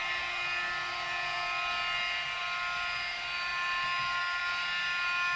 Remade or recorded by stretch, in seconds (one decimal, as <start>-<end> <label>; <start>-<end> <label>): 0.0-5.4 recorded